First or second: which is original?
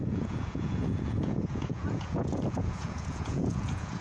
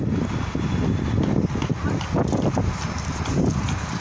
second